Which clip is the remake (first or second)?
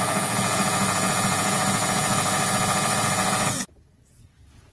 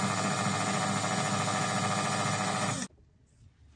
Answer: first